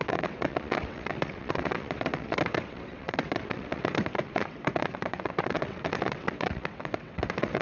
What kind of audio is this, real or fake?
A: fake